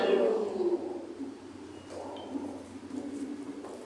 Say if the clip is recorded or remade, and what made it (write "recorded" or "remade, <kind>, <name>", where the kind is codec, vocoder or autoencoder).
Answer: recorded